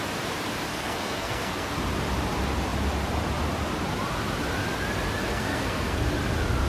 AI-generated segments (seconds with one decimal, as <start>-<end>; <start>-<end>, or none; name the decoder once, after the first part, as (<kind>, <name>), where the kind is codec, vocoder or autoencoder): 0.7-1.7 (codec, SNAC); 5.2-6.1